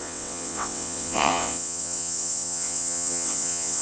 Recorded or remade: remade